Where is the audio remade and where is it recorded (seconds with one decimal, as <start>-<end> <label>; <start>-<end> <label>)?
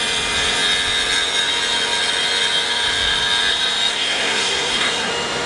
0.0-3.9 recorded; 3.9-5.1 remade; 5.1-5.5 recorded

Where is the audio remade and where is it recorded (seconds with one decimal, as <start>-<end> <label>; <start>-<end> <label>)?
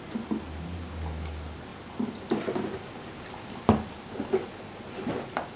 0.0-5.6 recorded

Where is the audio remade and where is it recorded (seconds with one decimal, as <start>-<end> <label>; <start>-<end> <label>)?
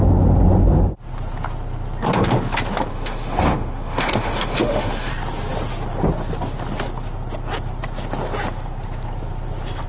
0.0-2.9 recorded; 2.9-5.1 remade; 5.1-9.9 recorded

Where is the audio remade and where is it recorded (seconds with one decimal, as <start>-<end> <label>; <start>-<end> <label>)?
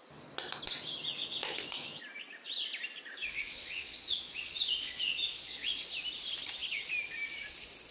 0.0-1.1 recorded; 1.1-2.0 remade; 2.0-3.2 recorded; 3.2-5.8 remade; 5.8-7.9 recorded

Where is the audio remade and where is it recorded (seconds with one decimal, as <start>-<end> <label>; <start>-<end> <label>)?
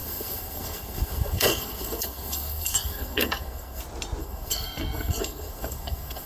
0.0-3.8 remade; 3.8-4.2 recorded; 4.2-6.3 remade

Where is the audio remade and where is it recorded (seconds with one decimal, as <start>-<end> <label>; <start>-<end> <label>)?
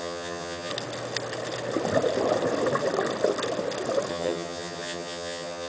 0.0-0.7 remade; 0.7-4.1 recorded; 4.1-5.7 remade